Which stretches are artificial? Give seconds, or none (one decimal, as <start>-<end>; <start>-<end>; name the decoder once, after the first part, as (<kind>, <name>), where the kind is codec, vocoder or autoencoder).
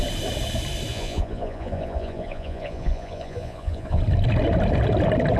0.9-4.0 (vocoder, Vocos)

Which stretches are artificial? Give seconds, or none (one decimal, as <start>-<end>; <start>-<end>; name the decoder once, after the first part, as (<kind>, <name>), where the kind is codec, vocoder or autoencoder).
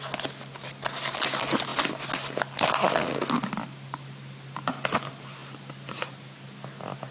none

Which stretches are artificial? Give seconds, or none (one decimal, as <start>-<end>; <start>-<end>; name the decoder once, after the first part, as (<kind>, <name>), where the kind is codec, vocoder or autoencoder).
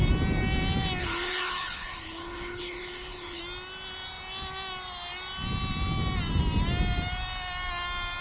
1.0-3.4 (codec, HILCodec)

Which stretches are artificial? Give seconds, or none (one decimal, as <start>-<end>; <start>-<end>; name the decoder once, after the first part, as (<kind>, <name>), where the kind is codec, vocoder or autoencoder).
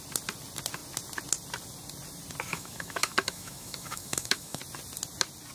2.5-4.6 (autoencoder, DAC-VAE)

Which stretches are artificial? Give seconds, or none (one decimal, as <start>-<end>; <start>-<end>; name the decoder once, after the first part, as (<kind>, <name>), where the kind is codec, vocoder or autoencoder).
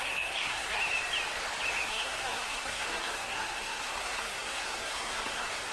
0.0-0.8 (codec, SNAC); 1.9-5.7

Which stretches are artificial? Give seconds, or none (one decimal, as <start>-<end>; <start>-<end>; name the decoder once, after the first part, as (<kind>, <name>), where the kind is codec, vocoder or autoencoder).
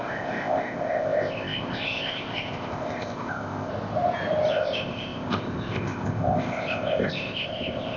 0.0-3.7 (codec, ZipCodec); 4.5-8.0